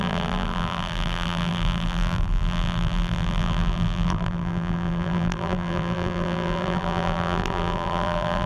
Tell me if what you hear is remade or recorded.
remade